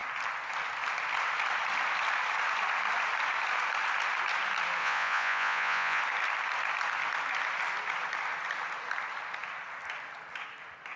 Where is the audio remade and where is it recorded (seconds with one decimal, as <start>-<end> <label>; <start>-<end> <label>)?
0.0-4.8 recorded; 4.8-6.0 remade; 6.0-11.0 recorded